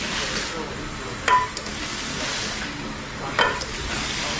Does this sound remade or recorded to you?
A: recorded